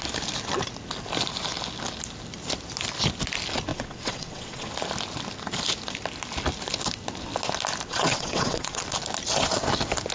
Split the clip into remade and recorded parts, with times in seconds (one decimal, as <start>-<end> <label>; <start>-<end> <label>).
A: 0.0-3.7 recorded; 3.7-4.7 remade; 4.7-7.9 recorded; 7.9-8.8 remade; 8.8-10.1 recorded